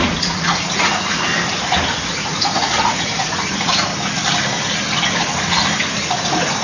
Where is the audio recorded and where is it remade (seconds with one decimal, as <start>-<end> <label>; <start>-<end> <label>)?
0.0-1.3 remade; 1.3-2.1 recorded; 2.1-3.9 remade; 3.9-6.6 recorded